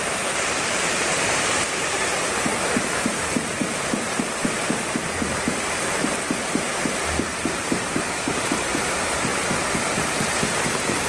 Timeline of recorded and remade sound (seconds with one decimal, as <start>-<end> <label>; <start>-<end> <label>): 0.0-11.1 remade